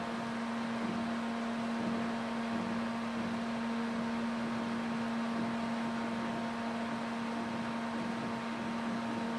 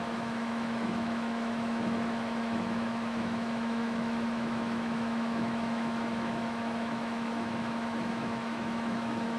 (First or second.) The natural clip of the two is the first